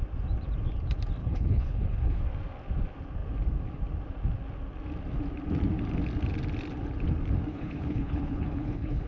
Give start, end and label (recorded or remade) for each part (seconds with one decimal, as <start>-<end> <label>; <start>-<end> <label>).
0.0-1.2 recorded; 1.2-2.2 remade; 2.2-7.5 recorded; 7.5-9.1 remade